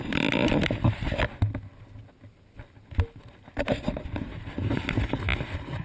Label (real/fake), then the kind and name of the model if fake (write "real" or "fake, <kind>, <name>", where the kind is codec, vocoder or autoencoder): real